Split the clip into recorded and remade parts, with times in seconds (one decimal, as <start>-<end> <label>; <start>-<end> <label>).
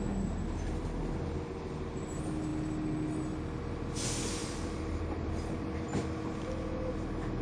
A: 0.0-4.4 recorded; 4.4-5.3 remade; 5.3-7.4 recorded